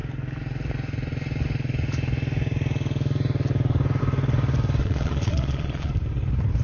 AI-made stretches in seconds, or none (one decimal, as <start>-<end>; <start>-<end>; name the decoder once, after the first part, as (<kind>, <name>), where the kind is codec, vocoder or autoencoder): 4.8-5.9 (vocoder, Vocos)